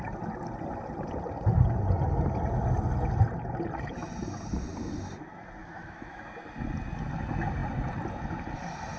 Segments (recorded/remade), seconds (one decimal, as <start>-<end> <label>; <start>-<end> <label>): 0.0-5.6 recorded; 5.6-6.2 remade; 6.2-9.0 recorded